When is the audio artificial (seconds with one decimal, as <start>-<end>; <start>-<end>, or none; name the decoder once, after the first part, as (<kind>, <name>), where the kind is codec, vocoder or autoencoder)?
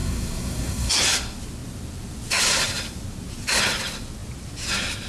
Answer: 0.0-0.9 (codec, SNAC)